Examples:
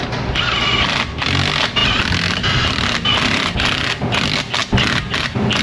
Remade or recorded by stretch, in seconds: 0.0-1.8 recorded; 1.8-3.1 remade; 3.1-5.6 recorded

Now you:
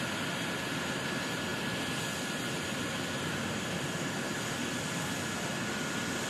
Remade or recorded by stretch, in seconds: 0.0-6.3 recorded

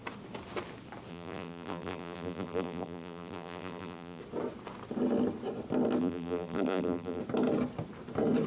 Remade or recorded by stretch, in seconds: 0.0-1.1 recorded; 1.1-4.2 remade; 4.2-6.0 recorded; 6.0-7.2 remade; 7.2-8.5 recorded

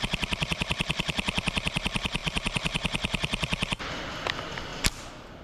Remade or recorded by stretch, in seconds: 0.0-2.2 remade; 2.2-3.8 recorded; 3.8-5.4 remade

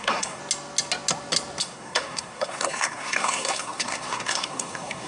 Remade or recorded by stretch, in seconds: 0.0-0.4 remade; 0.4-1.6 recorded; 1.6-5.1 remade

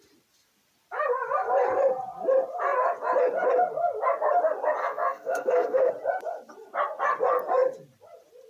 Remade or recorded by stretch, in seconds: 0.0-4.8 recorded; 4.8-5.9 remade; 5.9-8.5 recorded

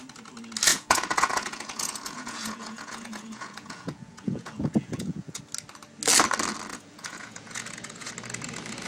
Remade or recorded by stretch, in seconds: 0.0-0.7 recorded; 0.7-5.4 remade; 5.4-6.7 recorded; 6.7-8.1 remade; 8.1-8.9 recorded

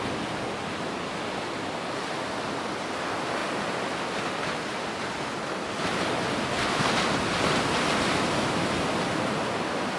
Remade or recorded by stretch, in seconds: 0.0-10.0 recorded